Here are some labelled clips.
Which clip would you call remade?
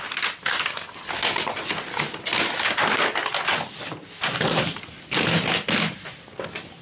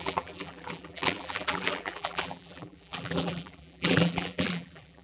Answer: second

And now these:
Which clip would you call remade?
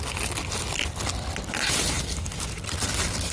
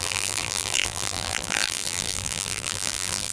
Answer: second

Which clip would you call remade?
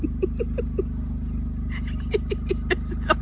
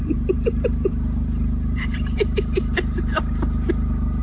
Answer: second